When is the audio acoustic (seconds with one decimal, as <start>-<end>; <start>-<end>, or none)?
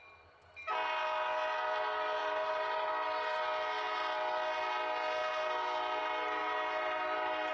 0.0-2.2; 2.9-7.5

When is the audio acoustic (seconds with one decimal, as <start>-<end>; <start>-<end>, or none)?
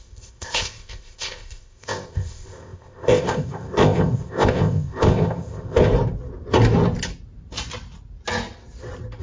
5.9-9.2